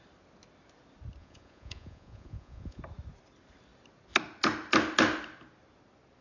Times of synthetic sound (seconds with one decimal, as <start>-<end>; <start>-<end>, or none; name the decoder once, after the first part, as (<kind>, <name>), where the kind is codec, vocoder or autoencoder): 1.2-2.8 (vocoder, Vocos)